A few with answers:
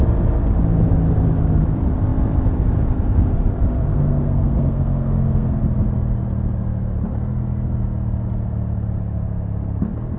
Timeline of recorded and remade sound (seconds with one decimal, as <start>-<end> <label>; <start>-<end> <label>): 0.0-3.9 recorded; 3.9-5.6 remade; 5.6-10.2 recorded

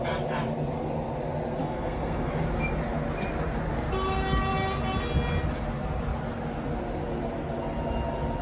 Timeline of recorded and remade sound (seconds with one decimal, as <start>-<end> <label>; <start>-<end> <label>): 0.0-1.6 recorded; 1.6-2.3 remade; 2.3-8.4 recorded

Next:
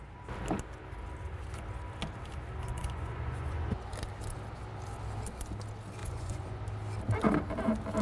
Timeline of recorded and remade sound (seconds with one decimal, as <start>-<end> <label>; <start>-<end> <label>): 0.0-2.7 recorded; 2.7-3.9 remade; 3.9-6.0 recorded; 6.0-6.6 remade; 6.6-8.0 recorded

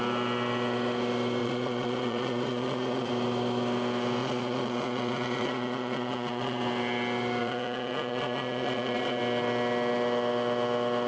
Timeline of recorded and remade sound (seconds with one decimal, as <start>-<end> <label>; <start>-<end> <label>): 0.0-1.4 recorded; 1.4-3.1 remade; 3.1-4.2 recorded; 4.2-6.6 remade; 6.6-7.4 recorded; 7.4-9.2 remade; 9.2-11.1 recorded